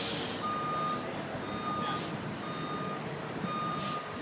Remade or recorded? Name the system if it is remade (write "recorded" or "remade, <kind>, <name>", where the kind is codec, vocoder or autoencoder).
recorded